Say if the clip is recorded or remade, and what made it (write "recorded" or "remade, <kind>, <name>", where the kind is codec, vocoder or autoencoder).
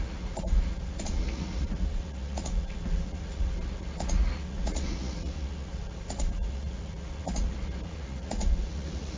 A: remade, vocoder, Vocos